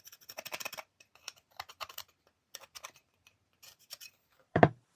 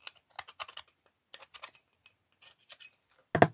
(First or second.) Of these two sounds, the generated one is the first